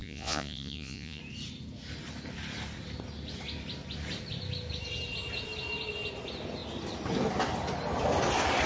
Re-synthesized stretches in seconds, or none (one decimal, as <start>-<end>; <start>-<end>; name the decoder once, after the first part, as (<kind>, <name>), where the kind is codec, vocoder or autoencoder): 0.0-1.2 (vocoder, Vocos)